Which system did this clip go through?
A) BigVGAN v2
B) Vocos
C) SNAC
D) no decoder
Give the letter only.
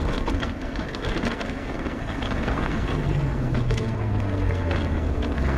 C